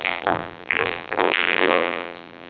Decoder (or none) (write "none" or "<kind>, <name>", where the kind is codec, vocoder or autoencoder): vocoder, BigVGAN v2